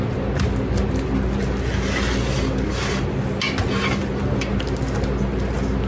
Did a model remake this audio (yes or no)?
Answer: no